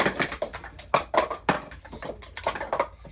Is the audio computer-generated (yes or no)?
no